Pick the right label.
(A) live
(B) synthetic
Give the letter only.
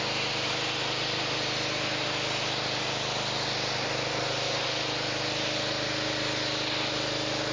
A